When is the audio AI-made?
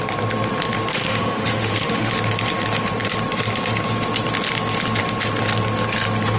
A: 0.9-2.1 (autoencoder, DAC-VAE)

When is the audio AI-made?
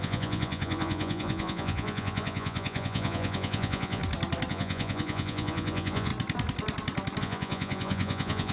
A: 0.0-4.0 (vocoder, Vocos); 4.5-6.1; 7.2-8.5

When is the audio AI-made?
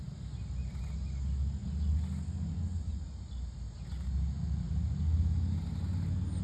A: none